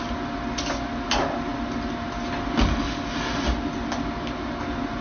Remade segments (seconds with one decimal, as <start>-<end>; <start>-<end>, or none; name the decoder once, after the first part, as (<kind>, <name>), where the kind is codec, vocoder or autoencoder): none